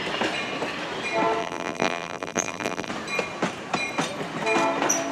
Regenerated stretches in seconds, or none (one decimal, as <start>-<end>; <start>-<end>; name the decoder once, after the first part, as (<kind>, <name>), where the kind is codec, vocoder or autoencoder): 1.4-2.9 (vocoder, BigVGAN v2)